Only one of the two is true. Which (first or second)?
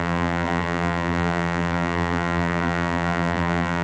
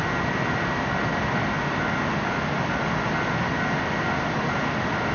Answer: second